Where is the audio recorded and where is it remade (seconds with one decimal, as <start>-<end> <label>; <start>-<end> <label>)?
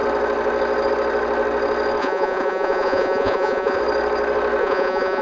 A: 0.0-2.0 recorded; 2.0-3.8 remade; 3.8-4.6 recorded; 4.6-5.2 remade